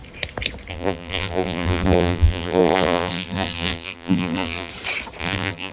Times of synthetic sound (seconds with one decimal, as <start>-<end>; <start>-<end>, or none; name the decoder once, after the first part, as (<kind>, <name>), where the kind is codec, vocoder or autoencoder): 0.7-4.7 (vocoder, BigVGAN v2); 5.2-5.7